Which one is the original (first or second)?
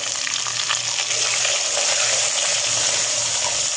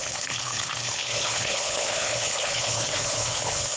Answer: first